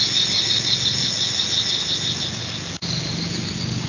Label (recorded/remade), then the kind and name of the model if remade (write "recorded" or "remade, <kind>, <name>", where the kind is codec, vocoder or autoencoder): recorded